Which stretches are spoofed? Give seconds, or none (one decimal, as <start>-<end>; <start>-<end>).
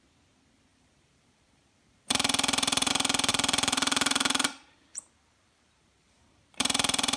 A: 0.7-2.9; 3.3-7.2